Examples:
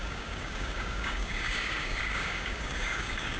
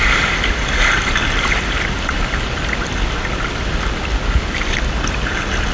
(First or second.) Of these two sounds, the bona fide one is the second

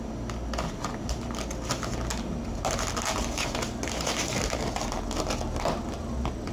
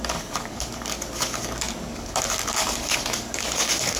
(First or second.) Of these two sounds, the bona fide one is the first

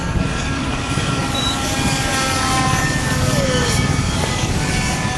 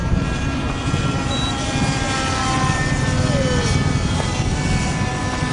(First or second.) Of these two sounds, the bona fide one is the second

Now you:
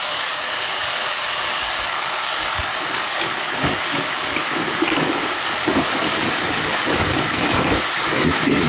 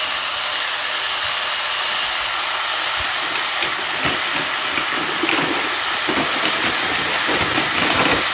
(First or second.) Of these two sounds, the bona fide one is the second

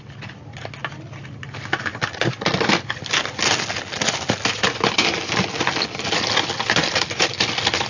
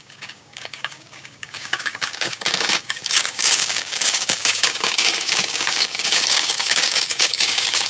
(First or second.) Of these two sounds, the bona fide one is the first